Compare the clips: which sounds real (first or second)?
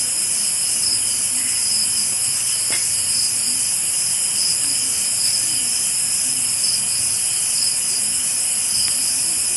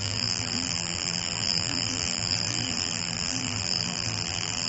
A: first